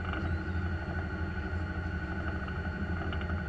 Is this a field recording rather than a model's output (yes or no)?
yes